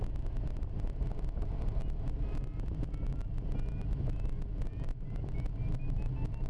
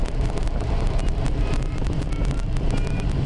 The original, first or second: first